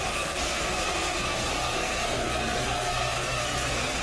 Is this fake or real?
fake